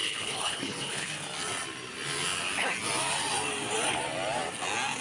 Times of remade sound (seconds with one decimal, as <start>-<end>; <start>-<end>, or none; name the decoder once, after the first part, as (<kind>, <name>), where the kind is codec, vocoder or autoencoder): 0.0-1.1 (codec, HILCodec)